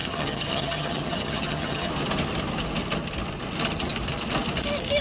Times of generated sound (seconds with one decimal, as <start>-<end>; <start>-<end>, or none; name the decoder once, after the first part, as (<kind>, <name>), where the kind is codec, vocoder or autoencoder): 0.0-1.9 (vocoder, HiFi-GAN)

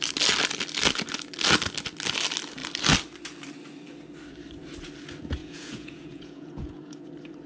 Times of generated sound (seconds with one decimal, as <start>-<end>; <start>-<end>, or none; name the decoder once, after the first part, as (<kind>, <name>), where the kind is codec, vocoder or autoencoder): 5.4-7.1 (vocoder, Vocos)

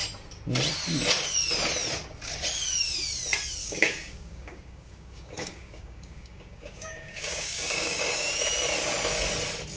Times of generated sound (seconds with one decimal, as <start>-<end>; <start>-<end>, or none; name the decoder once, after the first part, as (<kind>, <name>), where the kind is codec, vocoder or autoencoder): 3.6-8.4 (codec, DAC)

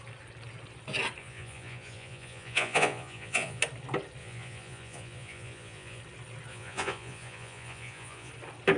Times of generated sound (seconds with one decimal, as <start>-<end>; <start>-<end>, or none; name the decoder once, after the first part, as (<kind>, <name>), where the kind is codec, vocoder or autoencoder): 1.2-3.6 (vocoder, Vocos); 4.2-6.0; 6.5-8.3